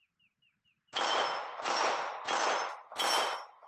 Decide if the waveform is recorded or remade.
recorded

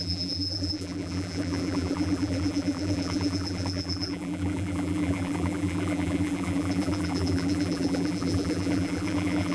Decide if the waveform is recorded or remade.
remade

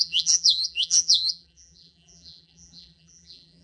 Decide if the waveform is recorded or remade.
remade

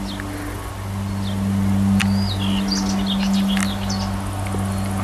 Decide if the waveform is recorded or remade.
recorded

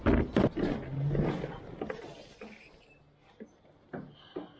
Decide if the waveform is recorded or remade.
recorded